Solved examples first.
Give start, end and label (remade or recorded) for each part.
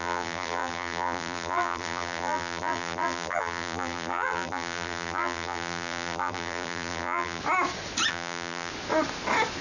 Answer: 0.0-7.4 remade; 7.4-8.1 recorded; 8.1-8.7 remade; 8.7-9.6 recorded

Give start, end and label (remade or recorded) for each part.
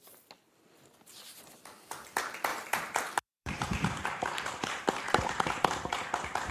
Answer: 0.0-2.5 recorded; 2.5-6.5 remade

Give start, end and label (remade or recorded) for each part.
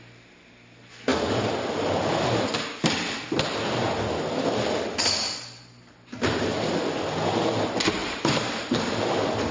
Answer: 0.0-8.0 recorded; 8.0-9.0 remade; 9.0-9.5 recorded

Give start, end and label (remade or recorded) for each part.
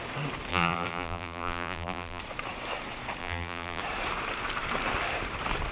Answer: 0.0-0.5 recorded; 0.5-2.2 remade; 2.2-3.2 recorded; 3.2-3.8 remade; 3.8-5.7 recorded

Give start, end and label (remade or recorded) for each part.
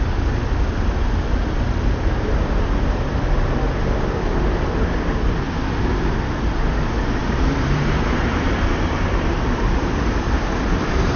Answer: 0.0-7.2 recorded; 7.2-11.2 remade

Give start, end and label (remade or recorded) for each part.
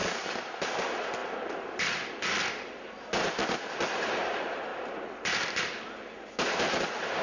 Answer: 0.0-0.6 remade; 0.6-1.2 recorded; 1.2-2.7 remade; 2.7-4.7 recorded; 4.7-5.6 remade; 5.6-7.2 recorded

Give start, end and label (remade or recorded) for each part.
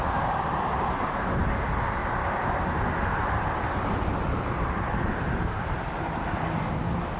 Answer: 0.0-2.0 recorded; 2.0-6.2 remade; 6.2-7.2 recorded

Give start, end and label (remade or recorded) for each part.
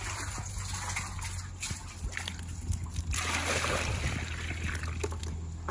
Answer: 0.0-5.7 recorded